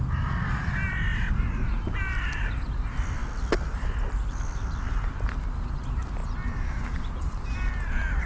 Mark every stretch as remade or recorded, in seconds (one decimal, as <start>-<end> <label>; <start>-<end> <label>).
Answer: 0.0-8.3 recorded